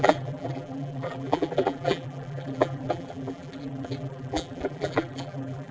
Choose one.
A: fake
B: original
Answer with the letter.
A